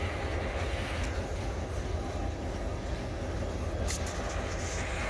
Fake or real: real